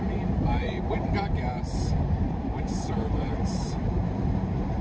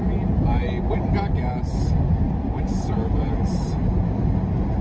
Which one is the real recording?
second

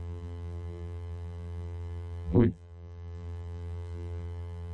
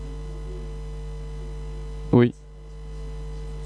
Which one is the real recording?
second